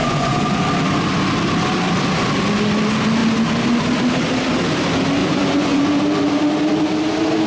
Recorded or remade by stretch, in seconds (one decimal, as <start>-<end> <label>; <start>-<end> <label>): 0.0-0.6 remade; 0.6-5.2 recorded; 5.2-5.8 remade; 5.8-7.5 recorded